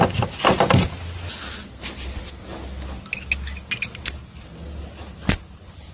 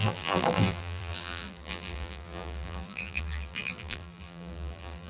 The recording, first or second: first